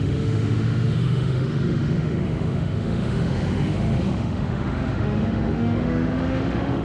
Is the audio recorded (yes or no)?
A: no